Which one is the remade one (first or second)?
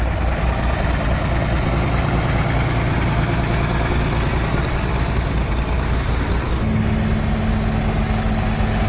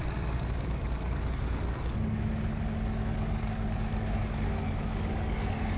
second